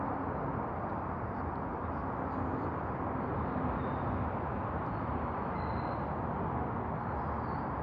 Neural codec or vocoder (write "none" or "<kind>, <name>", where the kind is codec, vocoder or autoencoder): none